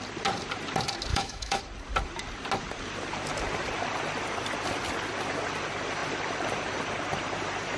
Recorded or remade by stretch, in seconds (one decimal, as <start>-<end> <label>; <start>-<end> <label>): 0.0-1.1 recorded; 1.1-1.6 remade; 1.6-7.8 recorded